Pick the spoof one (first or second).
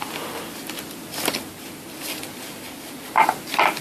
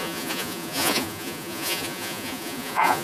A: second